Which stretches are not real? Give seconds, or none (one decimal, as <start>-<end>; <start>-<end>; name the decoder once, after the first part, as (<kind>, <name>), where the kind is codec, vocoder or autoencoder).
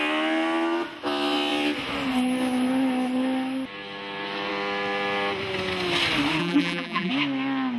6.4-7.1 (vocoder, BigVGAN v2)